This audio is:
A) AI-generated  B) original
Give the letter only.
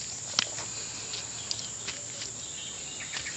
B